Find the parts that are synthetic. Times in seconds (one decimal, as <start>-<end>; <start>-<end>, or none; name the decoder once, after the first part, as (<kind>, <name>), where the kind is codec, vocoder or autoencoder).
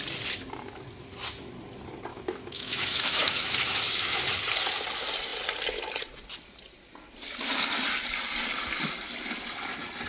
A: 2.1-4.2 (autoencoder, DAC-VAE)